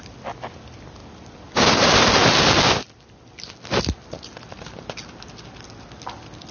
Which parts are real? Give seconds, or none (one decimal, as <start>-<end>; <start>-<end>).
0.0-6.5